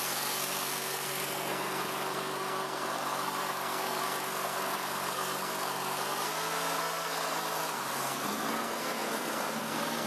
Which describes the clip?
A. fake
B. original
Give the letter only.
A